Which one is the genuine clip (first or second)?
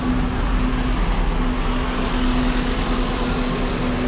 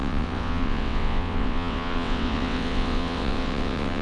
first